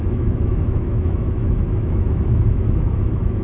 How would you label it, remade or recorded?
remade